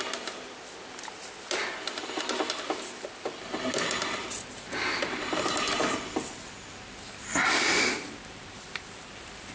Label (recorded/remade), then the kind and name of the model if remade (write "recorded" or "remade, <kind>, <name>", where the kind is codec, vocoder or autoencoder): recorded